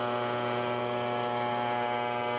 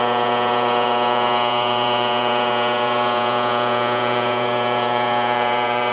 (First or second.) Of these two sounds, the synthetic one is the second